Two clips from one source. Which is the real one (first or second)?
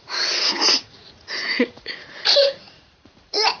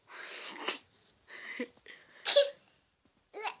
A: second